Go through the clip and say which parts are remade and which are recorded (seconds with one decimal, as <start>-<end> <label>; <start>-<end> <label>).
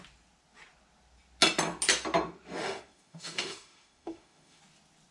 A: 0.0-2.6 recorded; 2.6-4.6 remade; 4.6-5.1 recorded